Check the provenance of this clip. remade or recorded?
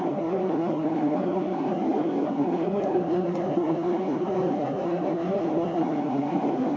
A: remade